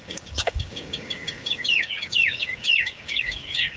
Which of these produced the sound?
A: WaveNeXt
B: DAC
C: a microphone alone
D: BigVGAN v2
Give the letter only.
B